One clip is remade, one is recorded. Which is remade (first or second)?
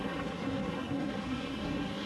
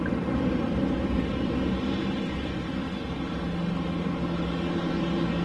first